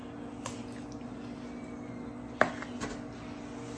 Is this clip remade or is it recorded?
recorded